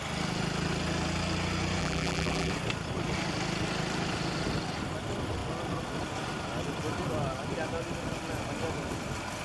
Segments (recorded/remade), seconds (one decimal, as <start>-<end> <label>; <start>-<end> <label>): 0.0-1.8 recorded; 1.8-2.5 remade; 2.5-9.4 recorded